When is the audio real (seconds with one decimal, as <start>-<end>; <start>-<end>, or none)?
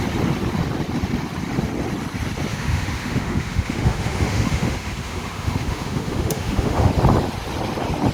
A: 0.0-2.5; 6.9-8.1